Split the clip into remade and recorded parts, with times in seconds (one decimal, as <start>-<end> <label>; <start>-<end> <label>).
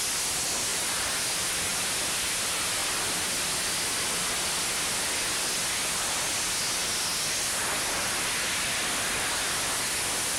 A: 0.0-0.7 recorded; 0.7-1.5 remade; 1.5-10.4 recorded